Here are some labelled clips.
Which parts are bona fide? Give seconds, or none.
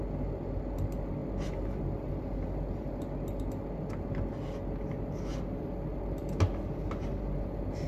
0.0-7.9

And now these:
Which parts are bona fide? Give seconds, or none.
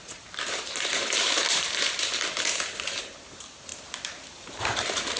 3.7-4.6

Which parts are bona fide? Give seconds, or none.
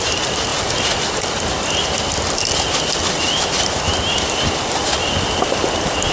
0.0-6.1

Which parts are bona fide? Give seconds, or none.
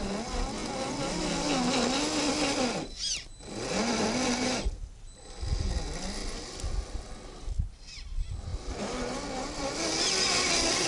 0.0-10.9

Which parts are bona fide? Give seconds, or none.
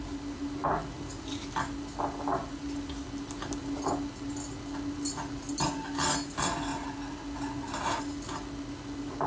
0.0-9.3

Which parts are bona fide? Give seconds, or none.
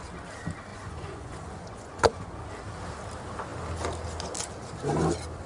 0.0-0.7; 2.5-5.5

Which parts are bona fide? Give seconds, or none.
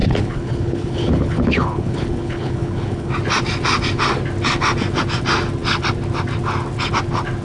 3.1-7.4